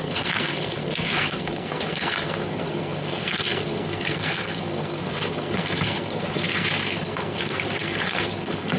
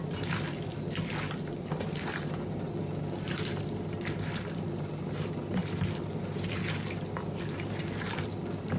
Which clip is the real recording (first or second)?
second